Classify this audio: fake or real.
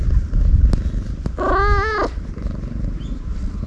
real